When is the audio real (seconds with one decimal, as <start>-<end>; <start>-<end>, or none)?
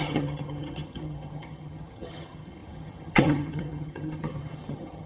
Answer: none